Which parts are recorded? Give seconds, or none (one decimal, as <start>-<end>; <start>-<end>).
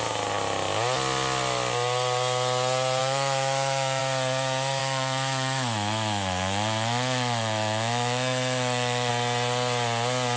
0.0-3.0; 4.0-4.8; 9.1-10.4